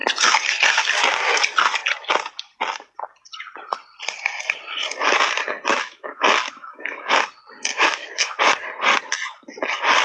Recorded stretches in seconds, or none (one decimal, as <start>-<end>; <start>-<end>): 0.0-5.7; 7.1-7.7; 8.4-10.0